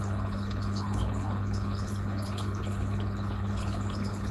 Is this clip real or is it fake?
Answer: fake